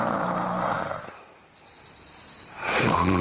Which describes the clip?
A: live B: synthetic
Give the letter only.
B